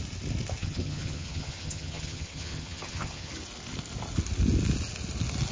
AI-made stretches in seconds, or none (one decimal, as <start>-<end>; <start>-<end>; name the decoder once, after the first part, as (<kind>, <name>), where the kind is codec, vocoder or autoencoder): 0.6-3.3 (vocoder, HiFi-GAN)